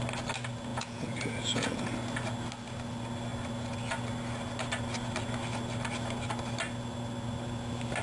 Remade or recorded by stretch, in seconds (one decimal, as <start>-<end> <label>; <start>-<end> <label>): 0.0-0.7 recorded; 0.7-1.8 remade; 1.8-8.0 recorded